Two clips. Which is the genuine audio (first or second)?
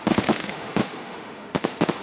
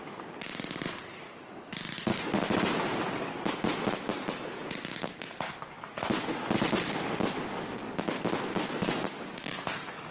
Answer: second